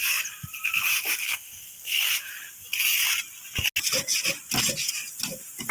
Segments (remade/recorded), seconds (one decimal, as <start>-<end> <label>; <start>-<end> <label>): 0.0-1.2 recorded; 1.2-2.0 remade; 2.0-5.7 recorded

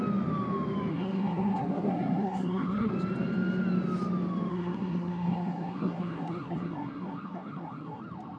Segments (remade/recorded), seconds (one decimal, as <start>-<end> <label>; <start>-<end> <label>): 0.0-0.9 recorded; 0.9-2.9 remade; 2.9-4.5 recorded; 4.5-8.0 remade; 8.0-8.4 recorded